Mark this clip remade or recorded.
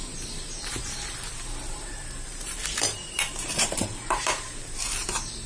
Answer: remade